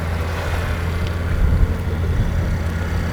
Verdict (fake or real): real